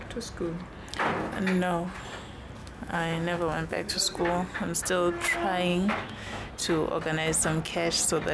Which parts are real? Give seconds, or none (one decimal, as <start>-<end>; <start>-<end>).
0.0-2.6; 3.9-5.7; 6.5-8.3